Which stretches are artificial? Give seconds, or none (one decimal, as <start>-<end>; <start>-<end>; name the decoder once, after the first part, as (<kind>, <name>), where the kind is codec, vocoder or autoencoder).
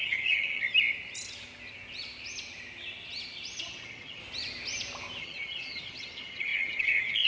0.0-0.6 (vocoder, HiFi-GAN); 3.6-4.2; 5.2-7.3